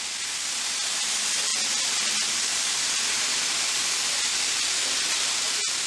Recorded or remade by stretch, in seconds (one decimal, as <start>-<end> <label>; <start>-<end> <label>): 0.0-5.9 recorded